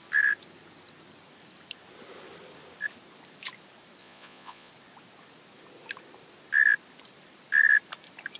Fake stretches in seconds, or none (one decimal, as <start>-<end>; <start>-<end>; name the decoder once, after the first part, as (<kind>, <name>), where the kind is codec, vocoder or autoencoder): 4.0-4.7 (vocoder, Vocos)